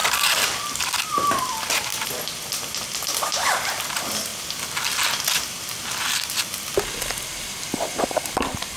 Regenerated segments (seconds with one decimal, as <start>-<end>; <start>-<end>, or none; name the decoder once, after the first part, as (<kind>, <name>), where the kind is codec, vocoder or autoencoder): 1.4-1.9 (vocoder, BigVGAN v2); 3.0-4.3; 6.4-8.8